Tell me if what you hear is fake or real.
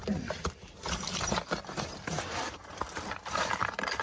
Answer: fake